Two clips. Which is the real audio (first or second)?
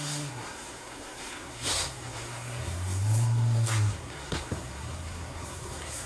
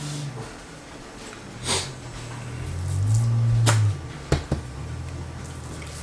second